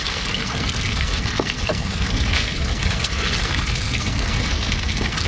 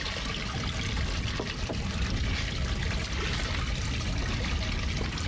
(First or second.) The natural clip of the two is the second